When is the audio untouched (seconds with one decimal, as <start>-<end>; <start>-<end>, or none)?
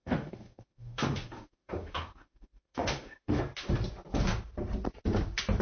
3.4-5.6